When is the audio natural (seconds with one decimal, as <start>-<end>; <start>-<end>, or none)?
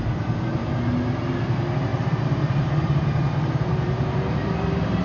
0.6-1.3